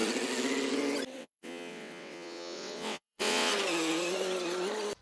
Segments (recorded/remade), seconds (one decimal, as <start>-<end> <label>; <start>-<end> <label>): 0.0-1.2 recorded; 1.2-3.5 remade; 3.5-5.0 recorded